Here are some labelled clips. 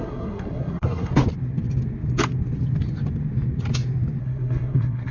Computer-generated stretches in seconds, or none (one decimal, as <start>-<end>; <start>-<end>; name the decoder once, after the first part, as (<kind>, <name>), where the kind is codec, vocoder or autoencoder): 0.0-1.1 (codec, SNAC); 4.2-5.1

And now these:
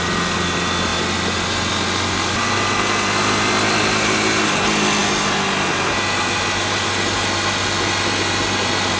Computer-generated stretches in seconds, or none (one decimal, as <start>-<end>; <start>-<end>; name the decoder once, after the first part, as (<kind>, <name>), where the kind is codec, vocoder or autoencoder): none

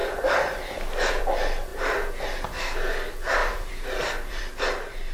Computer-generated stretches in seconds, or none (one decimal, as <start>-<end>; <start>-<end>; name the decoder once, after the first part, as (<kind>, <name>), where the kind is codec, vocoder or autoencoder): 0.0-1.2 (vocoder, BigVGAN v2); 3.4-4.4